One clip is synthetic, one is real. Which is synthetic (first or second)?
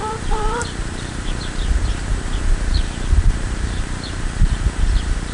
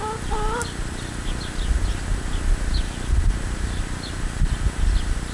first